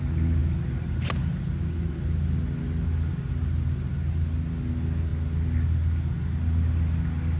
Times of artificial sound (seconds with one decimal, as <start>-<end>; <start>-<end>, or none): none